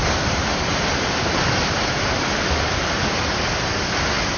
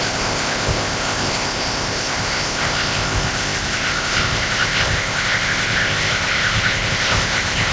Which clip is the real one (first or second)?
first